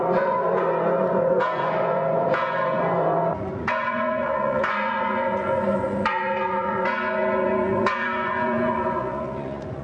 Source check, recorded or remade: remade